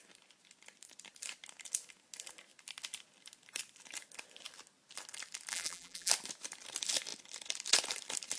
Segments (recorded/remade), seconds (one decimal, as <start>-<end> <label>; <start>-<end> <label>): 0.0-5.5 recorded; 5.5-6.1 remade; 6.1-8.4 recorded